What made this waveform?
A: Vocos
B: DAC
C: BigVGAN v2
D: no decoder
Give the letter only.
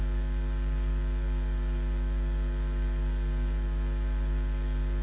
B